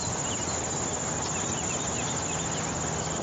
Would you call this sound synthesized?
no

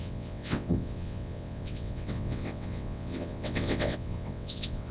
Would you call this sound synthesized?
yes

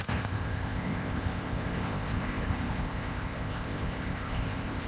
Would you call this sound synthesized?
yes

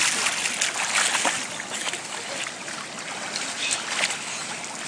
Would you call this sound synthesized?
no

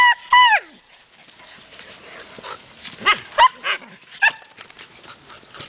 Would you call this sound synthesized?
no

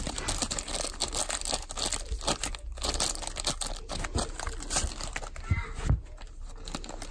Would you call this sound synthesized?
no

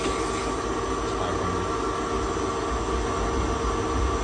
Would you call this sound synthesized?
no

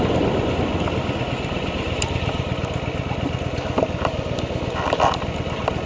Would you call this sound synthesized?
no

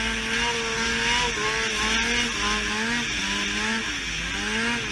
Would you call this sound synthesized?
no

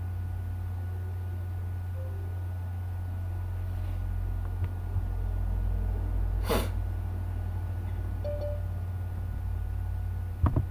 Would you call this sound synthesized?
no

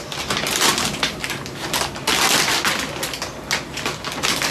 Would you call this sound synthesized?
no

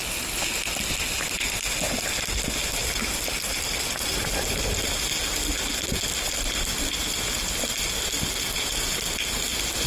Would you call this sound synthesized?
no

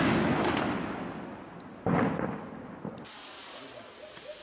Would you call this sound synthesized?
no